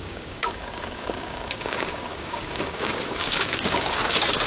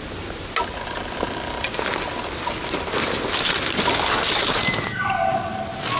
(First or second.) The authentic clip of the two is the second